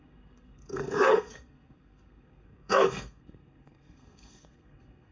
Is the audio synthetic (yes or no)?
yes